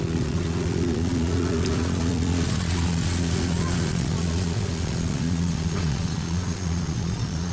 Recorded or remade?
remade